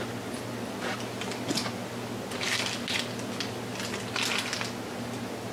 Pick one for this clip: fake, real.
real